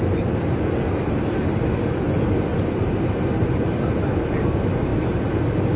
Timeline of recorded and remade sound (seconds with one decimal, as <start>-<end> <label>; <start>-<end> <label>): 0.0-5.8 recorded